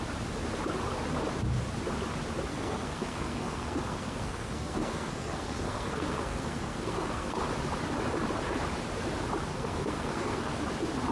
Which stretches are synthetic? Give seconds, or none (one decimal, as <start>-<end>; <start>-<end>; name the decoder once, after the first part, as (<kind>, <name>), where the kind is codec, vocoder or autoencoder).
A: 2.5-7.4 (codec, SNAC); 9.5-10.5